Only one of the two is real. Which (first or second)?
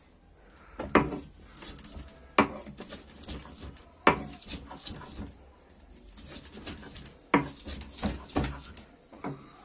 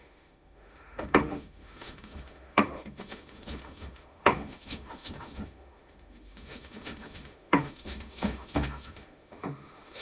first